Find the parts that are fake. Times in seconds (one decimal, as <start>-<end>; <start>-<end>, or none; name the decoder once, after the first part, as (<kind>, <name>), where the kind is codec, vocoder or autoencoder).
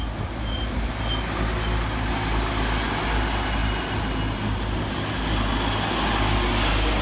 none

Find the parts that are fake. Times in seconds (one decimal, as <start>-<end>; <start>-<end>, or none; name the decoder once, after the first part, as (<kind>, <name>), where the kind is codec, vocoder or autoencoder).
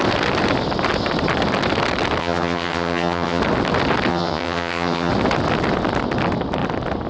2.2-3.4 (vocoder, HiFi-GAN); 4.1-5.1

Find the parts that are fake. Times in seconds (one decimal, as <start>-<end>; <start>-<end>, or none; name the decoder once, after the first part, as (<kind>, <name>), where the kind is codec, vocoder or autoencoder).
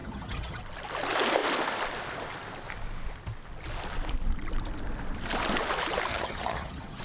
0.0-0.6 (vocoder, HiFi-GAN); 6.1-7.0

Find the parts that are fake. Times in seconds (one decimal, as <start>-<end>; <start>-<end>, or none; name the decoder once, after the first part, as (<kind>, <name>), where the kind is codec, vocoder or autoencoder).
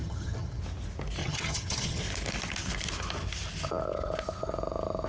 0.0-0.6 (vocoder, HiFi-GAN); 1.2-2.0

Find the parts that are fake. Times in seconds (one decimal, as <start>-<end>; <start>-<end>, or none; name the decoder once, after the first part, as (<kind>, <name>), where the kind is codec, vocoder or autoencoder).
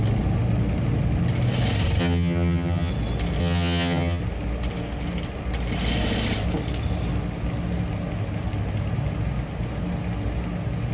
2.0-2.9 (vocoder, HiFi-GAN); 3.4-4.2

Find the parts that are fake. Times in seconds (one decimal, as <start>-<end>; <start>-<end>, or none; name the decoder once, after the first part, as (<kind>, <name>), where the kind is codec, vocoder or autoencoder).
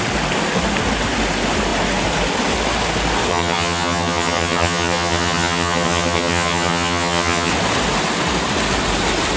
3.3-7.5 (vocoder, HiFi-GAN)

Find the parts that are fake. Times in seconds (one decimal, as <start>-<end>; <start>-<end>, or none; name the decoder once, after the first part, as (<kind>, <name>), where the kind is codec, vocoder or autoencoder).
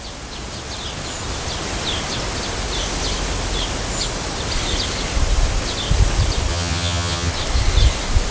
6.5-7.3 (vocoder, HiFi-GAN)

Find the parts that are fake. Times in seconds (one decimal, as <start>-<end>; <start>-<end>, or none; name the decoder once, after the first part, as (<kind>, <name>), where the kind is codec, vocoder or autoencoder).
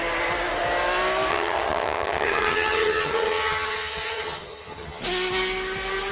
1.3-5.0 (vocoder, HiFi-GAN)